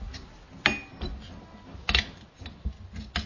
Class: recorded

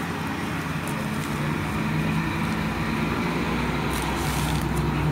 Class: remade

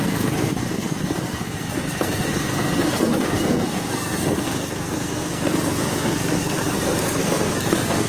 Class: remade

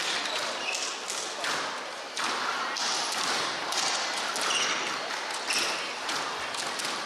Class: recorded